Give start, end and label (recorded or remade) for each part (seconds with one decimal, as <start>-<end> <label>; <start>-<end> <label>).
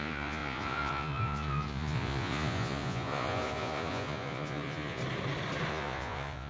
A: 0.0-5.0 remade; 5.0-5.7 recorded; 5.7-6.5 remade